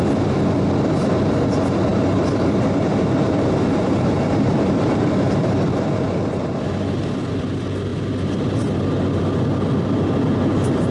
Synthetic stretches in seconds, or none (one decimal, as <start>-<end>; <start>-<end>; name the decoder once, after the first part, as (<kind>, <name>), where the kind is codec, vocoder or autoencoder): 1.9-6.5 (vocoder, BigVGAN v2)